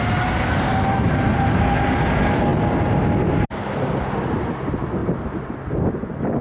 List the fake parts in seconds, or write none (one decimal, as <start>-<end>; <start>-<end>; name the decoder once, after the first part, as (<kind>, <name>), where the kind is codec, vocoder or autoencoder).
none